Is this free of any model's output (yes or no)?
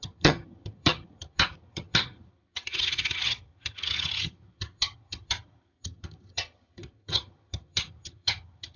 no